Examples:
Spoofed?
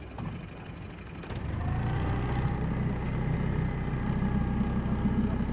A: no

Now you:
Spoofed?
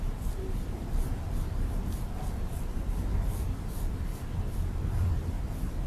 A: no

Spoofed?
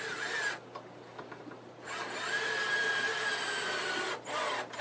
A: no